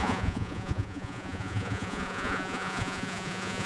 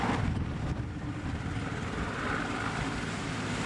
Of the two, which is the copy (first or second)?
first